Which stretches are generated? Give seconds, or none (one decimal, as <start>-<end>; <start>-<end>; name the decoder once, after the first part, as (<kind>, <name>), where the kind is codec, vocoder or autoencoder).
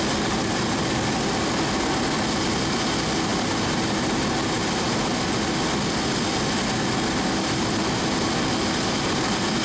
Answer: none